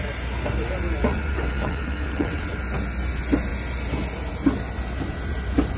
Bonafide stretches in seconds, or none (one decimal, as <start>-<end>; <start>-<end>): 0.0-1.1; 2.6-5.8